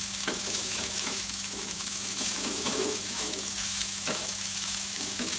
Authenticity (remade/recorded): remade